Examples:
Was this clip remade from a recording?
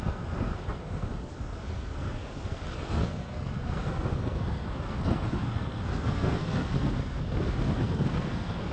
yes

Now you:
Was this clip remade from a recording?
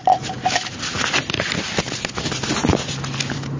no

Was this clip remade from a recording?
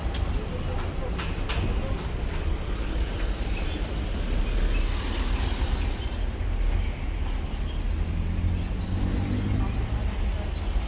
no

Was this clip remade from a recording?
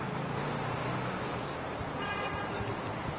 no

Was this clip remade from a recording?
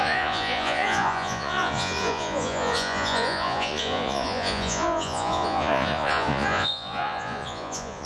yes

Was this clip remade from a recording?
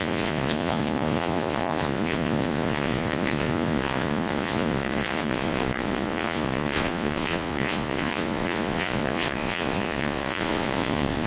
yes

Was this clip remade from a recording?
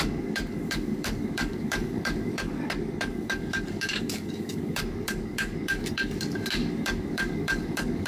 yes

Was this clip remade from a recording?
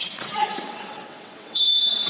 yes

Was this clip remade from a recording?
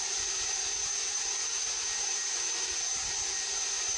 no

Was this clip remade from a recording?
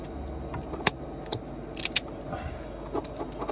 no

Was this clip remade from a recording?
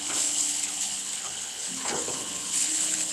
yes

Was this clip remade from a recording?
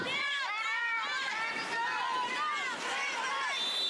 yes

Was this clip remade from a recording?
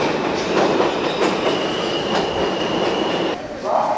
no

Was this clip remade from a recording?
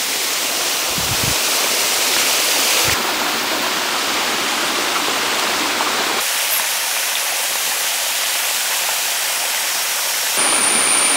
no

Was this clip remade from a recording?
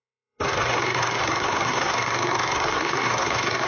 yes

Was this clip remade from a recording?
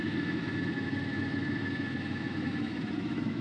yes